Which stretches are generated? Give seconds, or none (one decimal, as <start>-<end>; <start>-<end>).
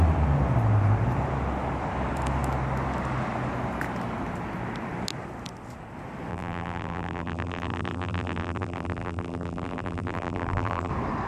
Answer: 6.3-10.9